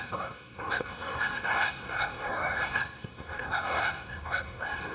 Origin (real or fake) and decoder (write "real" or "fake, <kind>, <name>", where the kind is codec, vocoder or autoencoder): fake, codec, SNAC